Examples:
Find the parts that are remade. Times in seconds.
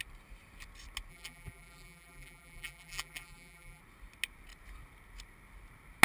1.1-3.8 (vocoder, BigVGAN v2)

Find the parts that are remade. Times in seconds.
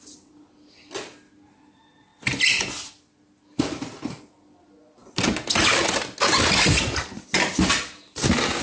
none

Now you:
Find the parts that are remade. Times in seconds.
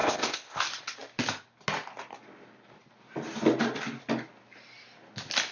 0.0-0.6 (codec, ZipCodec)